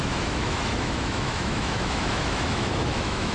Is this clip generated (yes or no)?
yes